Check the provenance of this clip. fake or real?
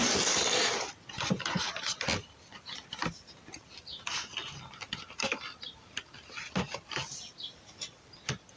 fake